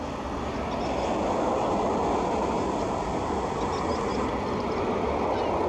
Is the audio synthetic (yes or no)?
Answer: no